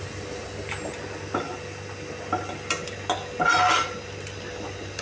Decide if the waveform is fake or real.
real